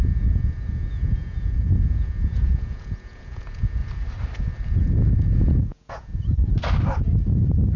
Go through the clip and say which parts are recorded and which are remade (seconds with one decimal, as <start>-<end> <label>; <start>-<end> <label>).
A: 0.0-3.8 remade; 3.8-4.8 recorded; 4.8-6.1 remade; 6.1-7.8 recorded